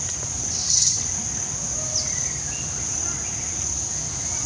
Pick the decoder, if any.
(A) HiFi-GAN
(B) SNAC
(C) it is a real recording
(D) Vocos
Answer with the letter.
C